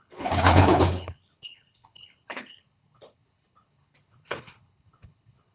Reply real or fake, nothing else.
fake